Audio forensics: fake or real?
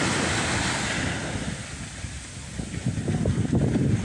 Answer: real